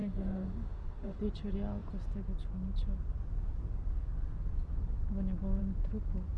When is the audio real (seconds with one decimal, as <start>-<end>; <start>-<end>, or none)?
1.2-6.4